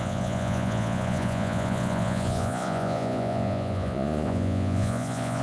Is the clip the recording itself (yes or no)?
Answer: no